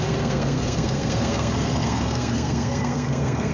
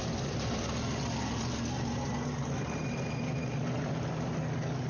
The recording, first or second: second